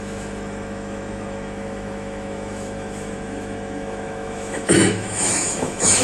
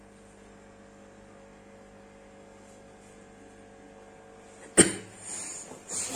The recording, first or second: second